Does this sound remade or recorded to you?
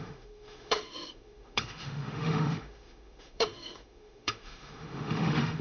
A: remade